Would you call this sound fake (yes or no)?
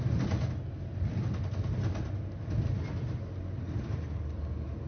no